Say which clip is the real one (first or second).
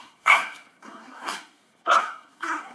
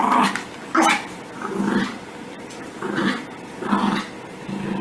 second